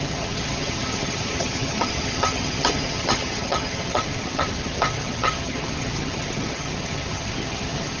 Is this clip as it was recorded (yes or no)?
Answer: no